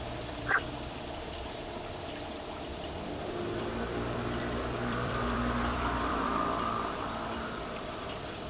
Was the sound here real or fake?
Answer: fake